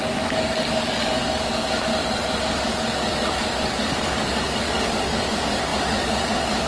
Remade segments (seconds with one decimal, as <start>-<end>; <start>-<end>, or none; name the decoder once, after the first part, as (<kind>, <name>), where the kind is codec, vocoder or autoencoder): 0.0-1.9 (codec, DAC); 2.4-6.7